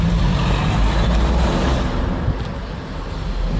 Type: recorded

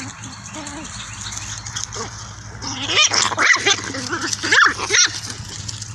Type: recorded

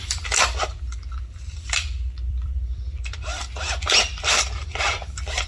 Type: remade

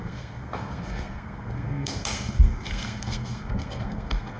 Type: remade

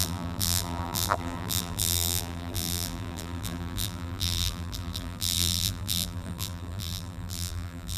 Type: remade